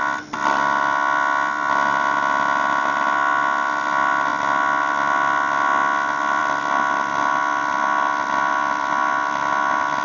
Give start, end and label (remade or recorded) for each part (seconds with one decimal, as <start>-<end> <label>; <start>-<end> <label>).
0.0-10.0 recorded